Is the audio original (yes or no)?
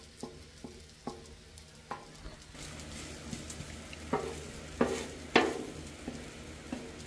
yes